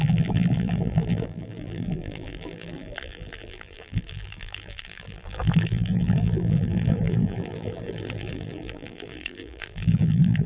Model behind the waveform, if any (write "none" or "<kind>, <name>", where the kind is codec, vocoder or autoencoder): vocoder, BigVGAN v2